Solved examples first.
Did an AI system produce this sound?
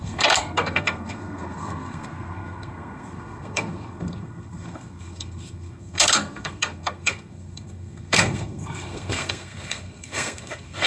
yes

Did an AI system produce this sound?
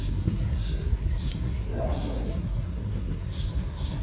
yes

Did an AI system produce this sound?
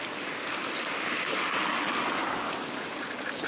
no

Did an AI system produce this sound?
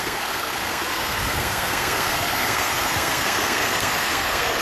yes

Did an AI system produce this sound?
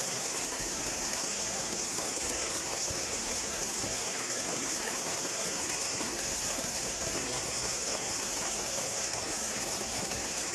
yes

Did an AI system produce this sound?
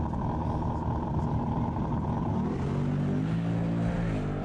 no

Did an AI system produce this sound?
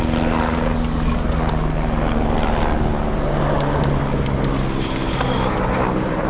no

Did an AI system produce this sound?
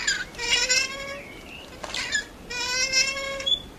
no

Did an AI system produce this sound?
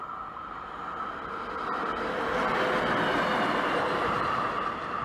no